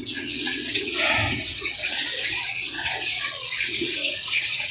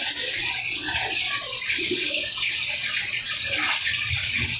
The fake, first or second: first